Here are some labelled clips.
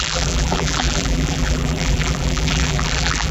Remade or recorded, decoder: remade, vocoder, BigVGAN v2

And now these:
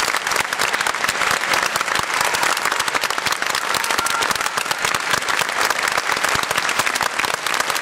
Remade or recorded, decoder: recorded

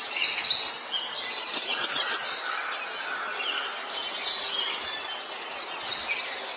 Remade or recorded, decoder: recorded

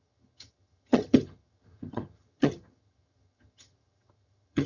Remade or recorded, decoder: remade, vocoder, HiFi-GAN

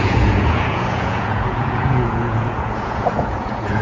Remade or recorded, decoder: remade, vocoder, Vocos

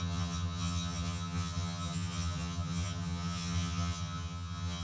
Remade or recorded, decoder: remade, vocoder, HiFi-GAN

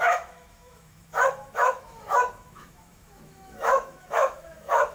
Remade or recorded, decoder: remade, autoencoder, DAC-VAE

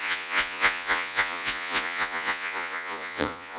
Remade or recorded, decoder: remade, vocoder, Vocos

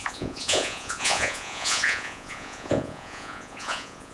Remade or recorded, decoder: remade, vocoder, Vocos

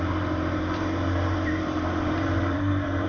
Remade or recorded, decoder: remade, vocoder, BigVGAN v2